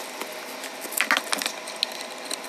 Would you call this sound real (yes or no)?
yes